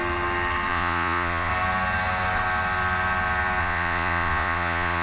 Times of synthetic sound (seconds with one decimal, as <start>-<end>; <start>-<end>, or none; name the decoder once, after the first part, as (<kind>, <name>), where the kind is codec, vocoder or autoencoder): 0.7-1.5 (vocoder, Vocos); 3.6-5.0